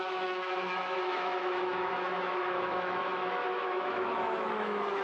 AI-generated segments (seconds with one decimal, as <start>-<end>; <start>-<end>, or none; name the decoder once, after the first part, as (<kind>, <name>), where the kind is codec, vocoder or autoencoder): 0.0-5.0 (autoencoder, DAC-VAE)